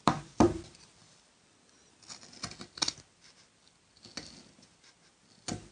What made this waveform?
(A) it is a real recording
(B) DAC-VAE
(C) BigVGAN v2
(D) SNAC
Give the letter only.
A